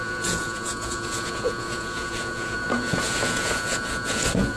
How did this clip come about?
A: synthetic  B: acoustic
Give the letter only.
A